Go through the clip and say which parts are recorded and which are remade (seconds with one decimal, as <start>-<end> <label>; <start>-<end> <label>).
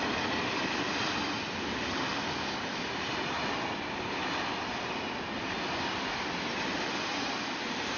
0.0-8.0 recorded